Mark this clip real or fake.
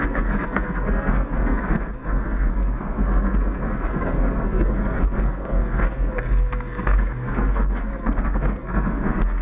fake